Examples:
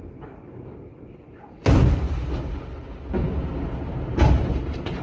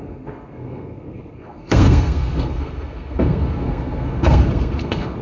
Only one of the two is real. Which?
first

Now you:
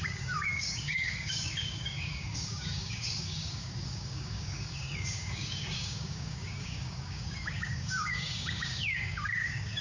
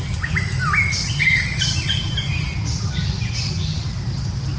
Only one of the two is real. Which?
second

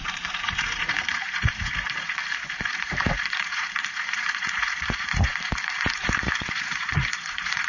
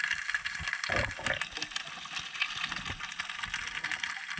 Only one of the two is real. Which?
second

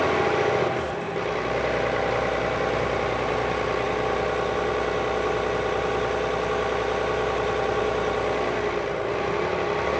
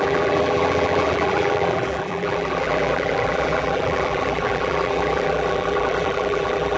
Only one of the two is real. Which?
first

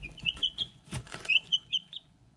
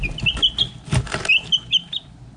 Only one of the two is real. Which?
second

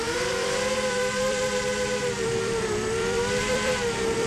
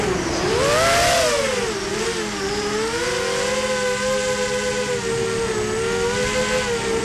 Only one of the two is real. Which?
second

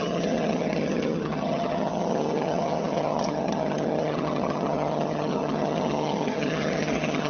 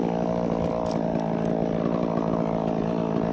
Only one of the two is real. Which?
second